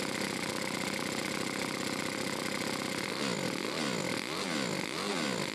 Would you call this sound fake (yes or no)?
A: no